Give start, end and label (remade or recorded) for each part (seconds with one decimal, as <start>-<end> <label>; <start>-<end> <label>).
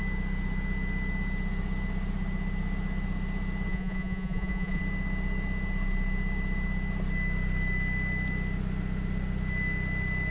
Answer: 0.0-3.7 recorded; 3.7-4.8 remade; 4.8-10.3 recorded